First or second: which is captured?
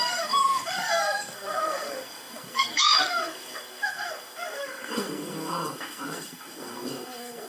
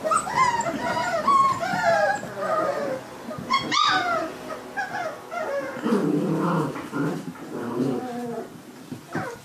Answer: second